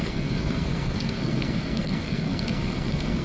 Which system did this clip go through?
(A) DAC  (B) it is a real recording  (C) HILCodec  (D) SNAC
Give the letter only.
D